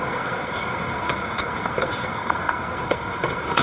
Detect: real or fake fake